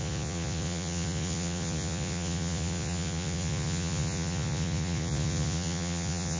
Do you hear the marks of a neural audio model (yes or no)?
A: yes